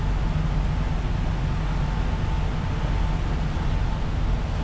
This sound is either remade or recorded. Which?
recorded